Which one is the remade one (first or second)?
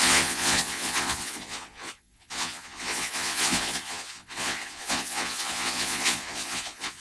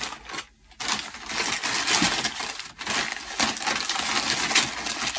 first